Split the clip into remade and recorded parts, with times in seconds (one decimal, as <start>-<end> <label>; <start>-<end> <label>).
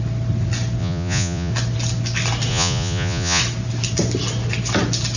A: 0.0-0.8 recorded; 0.8-1.5 remade; 1.5-2.5 recorded; 2.5-3.4 remade; 3.4-5.2 recorded